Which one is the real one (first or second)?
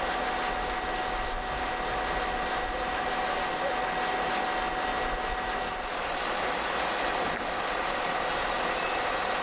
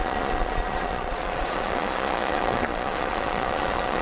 first